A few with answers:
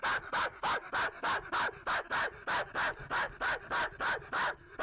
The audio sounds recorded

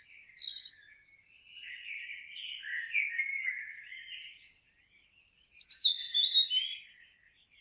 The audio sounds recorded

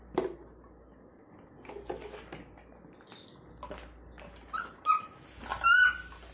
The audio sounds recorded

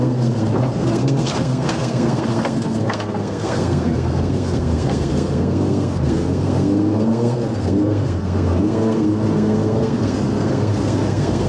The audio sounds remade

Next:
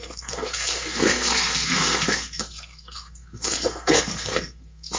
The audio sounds remade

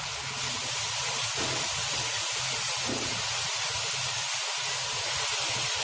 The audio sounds recorded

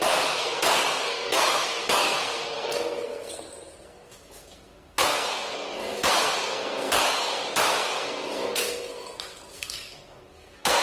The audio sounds remade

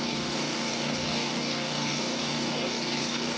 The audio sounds remade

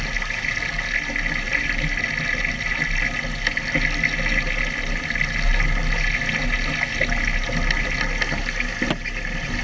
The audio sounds recorded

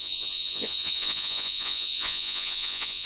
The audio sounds remade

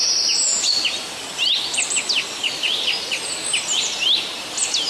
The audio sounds remade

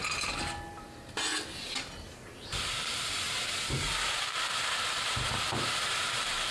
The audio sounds recorded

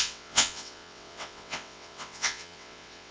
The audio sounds remade